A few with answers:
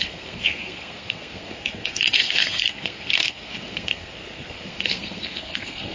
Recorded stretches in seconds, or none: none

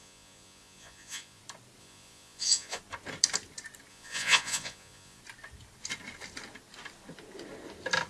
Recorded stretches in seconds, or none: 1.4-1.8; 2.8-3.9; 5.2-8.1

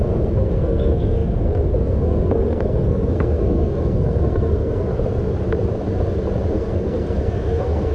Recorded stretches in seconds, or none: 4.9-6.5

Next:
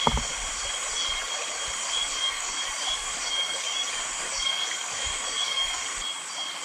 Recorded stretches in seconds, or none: 0.0-2.0; 5.8-6.6

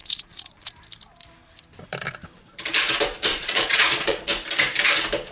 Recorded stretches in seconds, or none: 0.7-3.3; 4.2-5.3